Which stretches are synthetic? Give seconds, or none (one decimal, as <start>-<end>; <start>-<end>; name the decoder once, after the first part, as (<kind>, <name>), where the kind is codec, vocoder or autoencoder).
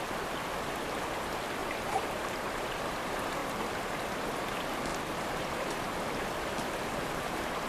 1.6-2.8 (vocoder, BigVGAN v2); 3.4-3.9